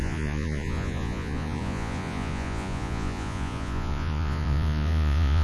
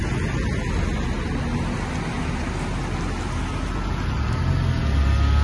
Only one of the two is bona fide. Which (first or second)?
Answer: second